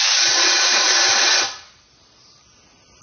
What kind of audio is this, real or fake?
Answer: real